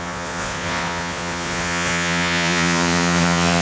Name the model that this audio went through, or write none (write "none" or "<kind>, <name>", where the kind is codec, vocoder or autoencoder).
vocoder, Vocos